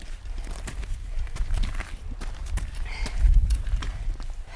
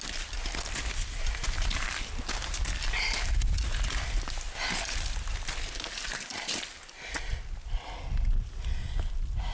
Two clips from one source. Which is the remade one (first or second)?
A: first